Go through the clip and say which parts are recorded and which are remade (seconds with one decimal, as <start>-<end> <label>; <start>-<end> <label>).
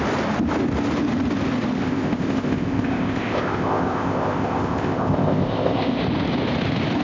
0.0-1.8 recorded; 1.8-6.0 remade; 6.0-7.0 recorded